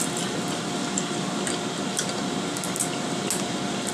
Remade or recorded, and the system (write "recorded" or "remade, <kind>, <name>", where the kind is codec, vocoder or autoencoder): recorded